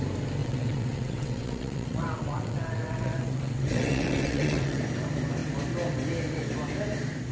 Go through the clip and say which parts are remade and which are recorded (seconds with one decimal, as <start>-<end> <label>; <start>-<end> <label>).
0.0-0.4 recorded; 0.4-4.8 remade; 4.8-7.3 recorded